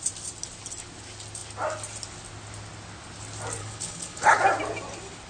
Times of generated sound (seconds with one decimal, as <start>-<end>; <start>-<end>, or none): 3.6-4.4